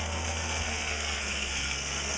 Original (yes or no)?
no